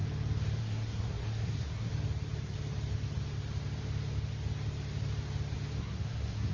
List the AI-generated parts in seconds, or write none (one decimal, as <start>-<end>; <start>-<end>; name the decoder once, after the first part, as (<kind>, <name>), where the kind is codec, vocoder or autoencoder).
0.6-1.9 (codec, SNAC); 5.8-6.5